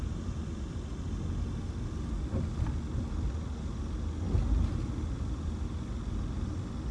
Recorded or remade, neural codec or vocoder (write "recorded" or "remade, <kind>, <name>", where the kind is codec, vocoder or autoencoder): recorded